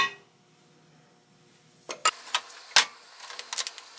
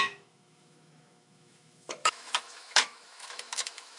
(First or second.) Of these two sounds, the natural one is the first